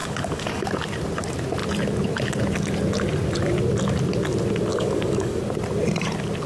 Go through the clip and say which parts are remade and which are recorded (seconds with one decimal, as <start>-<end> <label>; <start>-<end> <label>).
0.0-0.7 remade; 0.7-4.7 recorded; 4.7-5.4 remade; 5.4-6.5 recorded